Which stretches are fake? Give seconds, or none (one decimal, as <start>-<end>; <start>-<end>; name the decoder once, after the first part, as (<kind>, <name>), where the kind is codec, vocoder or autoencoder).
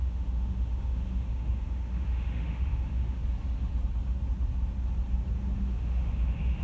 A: 0.0-3.2 (autoencoder, DAC-VAE); 5.4-6.6